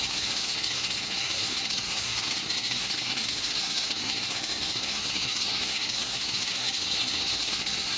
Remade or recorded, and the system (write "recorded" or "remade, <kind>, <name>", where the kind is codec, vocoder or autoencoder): remade, codec, SNAC